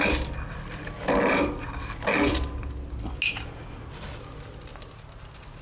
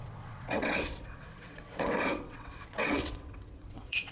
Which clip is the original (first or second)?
first